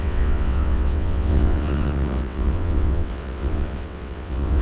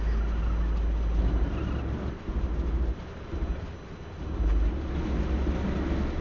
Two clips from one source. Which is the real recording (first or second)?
second